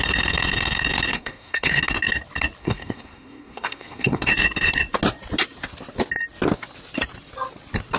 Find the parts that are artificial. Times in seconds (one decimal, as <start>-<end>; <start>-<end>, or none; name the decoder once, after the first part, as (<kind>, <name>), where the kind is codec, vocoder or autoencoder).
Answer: 1.1-1.8 (codec, SNAC); 2.6-4.3